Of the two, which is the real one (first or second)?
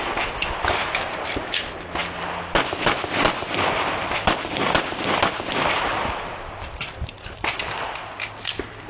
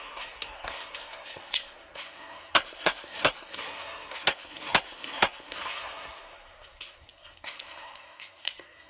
first